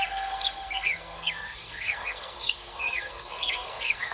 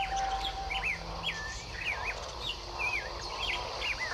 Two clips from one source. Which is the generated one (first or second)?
first